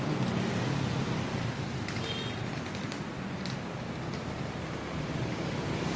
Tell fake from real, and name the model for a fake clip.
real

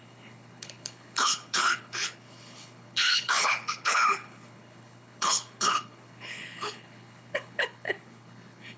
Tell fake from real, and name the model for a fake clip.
fake, codec, HILCodec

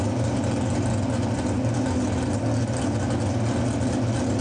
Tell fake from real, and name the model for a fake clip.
real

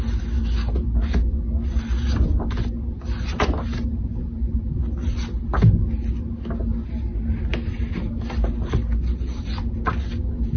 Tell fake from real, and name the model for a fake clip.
real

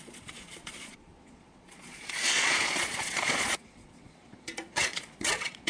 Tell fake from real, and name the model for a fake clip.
fake, vocoder, Vocos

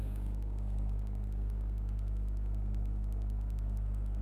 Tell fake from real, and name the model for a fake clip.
fake, codec, SNAC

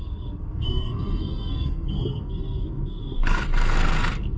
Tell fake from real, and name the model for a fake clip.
fake, codec, SNAC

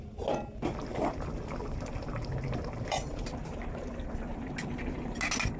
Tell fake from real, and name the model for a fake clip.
real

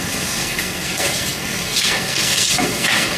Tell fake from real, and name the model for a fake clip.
fake, codec, SNAC